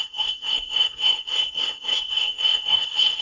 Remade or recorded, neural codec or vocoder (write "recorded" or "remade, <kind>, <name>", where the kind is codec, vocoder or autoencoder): remade, codec, SNAC